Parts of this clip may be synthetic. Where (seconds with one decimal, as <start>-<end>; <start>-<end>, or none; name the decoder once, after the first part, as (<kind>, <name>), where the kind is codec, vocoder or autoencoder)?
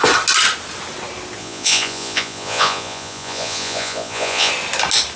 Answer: 1.4-4.5 (vocoder, Vocos)